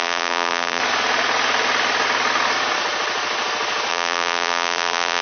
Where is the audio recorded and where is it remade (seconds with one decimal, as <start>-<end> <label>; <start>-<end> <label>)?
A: 0.0-0.8 remade; 0.8-3.9 recorded; 3.9-5.2 remade